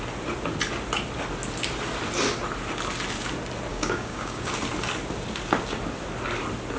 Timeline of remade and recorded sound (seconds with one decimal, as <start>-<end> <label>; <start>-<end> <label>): 0.0-3.7 recorded; 3.7-4.5 remade; 4.5-6.8 recorded